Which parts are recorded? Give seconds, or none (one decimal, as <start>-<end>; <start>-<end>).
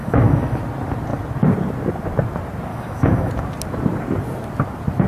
0.6-2.7; 3.3-5.1